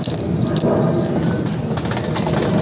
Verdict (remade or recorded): recorded